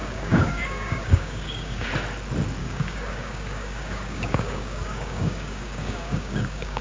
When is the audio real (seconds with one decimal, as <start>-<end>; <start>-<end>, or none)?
1.9-2.6

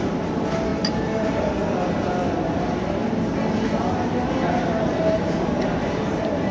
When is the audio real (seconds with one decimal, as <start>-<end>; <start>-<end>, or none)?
0.0-6.5

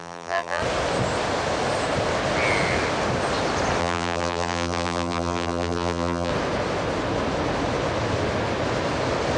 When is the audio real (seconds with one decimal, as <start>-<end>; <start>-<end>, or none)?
0.6-3.8; 6.3-9.4

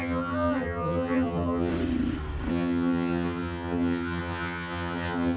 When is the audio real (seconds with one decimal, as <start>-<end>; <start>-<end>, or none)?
1.7-2.5

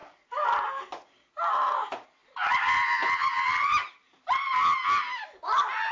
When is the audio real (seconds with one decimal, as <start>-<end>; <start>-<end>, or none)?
0.5-5.9

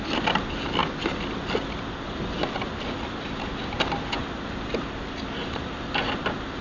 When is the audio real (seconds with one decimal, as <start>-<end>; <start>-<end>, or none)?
0.0-6.6

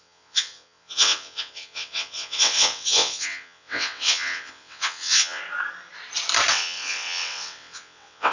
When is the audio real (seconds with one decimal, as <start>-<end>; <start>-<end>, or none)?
5.4-6.5